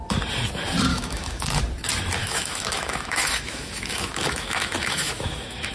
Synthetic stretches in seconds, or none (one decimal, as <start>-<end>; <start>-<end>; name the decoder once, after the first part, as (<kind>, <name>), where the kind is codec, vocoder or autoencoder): 0.9-1.6 (autoencoder, DAC-VAE); 2.2-5.7